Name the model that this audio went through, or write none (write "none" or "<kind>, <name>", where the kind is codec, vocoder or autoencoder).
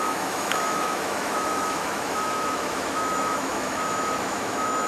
autoencoder, DAC-VAE